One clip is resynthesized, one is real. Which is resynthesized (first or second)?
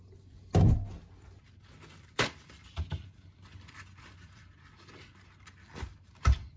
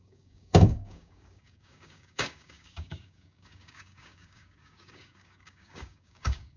second